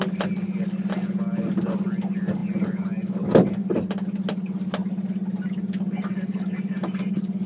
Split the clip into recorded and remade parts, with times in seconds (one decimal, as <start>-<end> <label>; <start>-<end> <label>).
0.0-7.5 recorded